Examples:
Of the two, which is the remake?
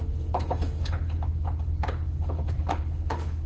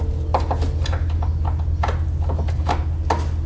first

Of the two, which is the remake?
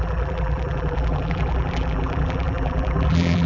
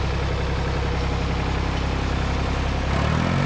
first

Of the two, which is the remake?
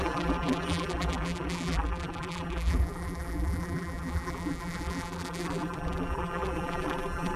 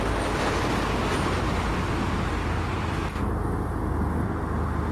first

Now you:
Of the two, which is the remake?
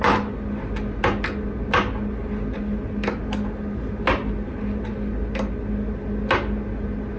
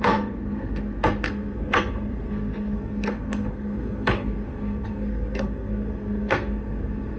second